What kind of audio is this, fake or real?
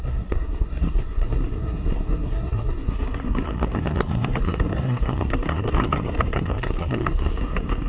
fake